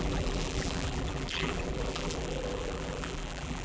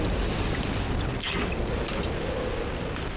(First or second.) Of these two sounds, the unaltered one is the second